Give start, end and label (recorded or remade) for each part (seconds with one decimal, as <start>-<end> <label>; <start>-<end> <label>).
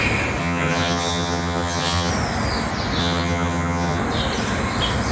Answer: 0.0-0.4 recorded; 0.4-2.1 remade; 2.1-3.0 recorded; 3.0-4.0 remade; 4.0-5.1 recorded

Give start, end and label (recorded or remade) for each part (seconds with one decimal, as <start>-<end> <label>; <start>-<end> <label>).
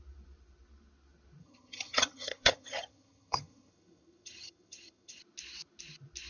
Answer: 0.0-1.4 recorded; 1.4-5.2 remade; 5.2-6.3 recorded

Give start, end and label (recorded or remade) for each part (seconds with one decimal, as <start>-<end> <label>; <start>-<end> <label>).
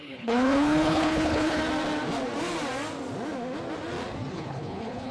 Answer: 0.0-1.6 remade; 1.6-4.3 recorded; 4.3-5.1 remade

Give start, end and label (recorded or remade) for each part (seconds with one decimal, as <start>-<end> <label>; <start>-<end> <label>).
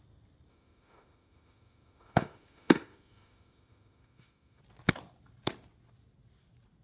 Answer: 0.0-0.5 recorded; 0.5-4.6 remade; 4.6-6.8 recorded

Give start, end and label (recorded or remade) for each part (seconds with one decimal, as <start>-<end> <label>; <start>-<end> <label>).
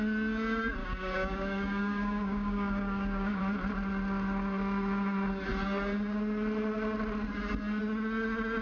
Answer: 0.0-0.8 recorded; 0.8-3.4 remade; 3.4-8.6 recorded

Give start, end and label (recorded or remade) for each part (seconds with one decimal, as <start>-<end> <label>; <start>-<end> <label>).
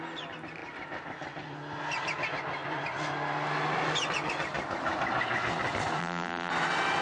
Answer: 0.0-6.0 recorded; 6.0-6.5 remade; 6.5-7.0 recorded